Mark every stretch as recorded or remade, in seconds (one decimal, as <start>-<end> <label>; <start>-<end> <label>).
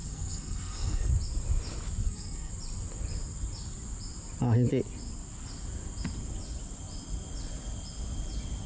0.0-1.1 remade; 1.1-2.0 recorded; 2.0-2.5 remade; 2.5-8.7 recorded